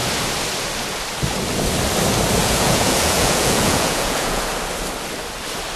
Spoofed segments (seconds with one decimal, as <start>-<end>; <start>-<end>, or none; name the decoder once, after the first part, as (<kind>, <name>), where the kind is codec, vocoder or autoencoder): 2.4-4.4 (vocoder, Vocos)